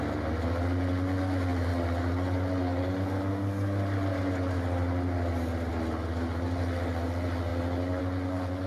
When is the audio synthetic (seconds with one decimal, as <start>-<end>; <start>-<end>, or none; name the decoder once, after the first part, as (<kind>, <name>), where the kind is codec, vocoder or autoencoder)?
none

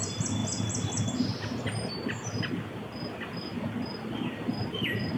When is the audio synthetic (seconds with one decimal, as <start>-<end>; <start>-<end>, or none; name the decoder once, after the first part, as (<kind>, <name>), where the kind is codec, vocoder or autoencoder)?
none

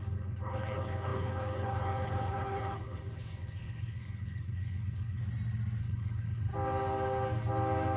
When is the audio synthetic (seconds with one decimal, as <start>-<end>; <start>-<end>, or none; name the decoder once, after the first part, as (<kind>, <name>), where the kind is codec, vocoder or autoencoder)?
0.0-5.2 (codec, HILCodec); 5.8-6.5

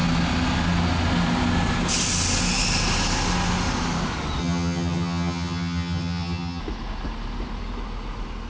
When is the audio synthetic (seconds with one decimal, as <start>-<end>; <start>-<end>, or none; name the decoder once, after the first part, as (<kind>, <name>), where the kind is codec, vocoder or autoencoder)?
4.4-6.6 (vocoder, HiFi-GAN)

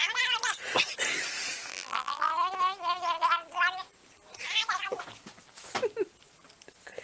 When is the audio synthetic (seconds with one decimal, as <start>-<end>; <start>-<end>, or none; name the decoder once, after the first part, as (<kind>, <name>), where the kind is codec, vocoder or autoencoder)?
1.7-2.3 (vocoder, BigVGAN v2)